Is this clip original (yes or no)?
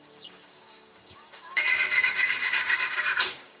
no